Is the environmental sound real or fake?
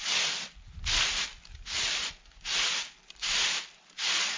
real